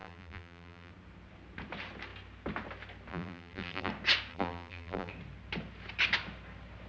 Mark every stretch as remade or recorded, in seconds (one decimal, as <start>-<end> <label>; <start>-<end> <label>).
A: 0.0-0.9 remade; 0.9-3.1 recorded; 3.1-3.9 remade; 3.9-4.3 recorded; 4.3-5.1 remade; 5.1-6.9 recorded